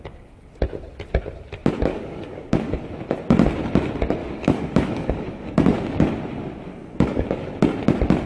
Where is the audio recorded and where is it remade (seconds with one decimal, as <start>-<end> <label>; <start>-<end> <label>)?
0.0-1.9 recorded; 1.9-2.8 remade; 2.8-4.2 recorded; 4.2-6.1 remade; 6.1-6.7 recorded; 6.7-7.5 remade; 7.5-8.3 recorded